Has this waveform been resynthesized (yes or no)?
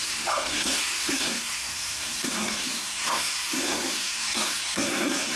yes